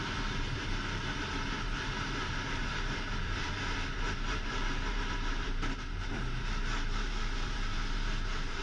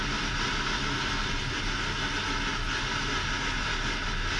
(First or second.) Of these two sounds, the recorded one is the second